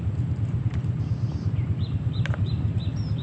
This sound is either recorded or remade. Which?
recorded